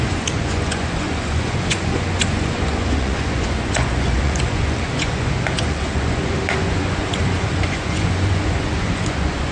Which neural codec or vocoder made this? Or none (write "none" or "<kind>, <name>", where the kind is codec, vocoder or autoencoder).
vocoder, Vocos